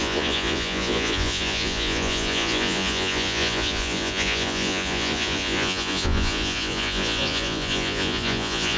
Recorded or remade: remade